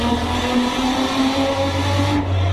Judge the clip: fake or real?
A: fake